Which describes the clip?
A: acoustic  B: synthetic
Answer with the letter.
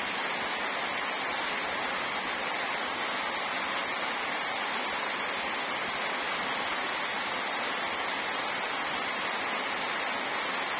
A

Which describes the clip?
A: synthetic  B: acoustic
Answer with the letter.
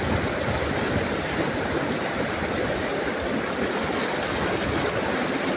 B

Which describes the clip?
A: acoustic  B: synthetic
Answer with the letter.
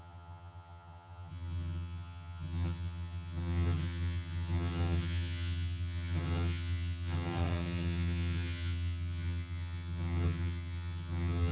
B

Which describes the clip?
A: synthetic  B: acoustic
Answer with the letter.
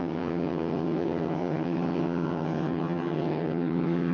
A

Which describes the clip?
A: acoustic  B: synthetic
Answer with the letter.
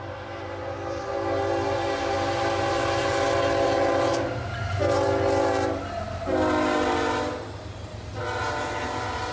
A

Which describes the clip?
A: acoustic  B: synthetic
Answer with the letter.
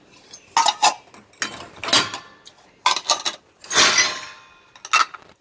A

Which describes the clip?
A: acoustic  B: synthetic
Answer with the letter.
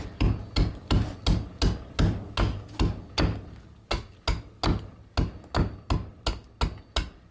A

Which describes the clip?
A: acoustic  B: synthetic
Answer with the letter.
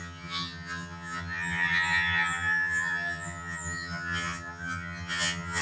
B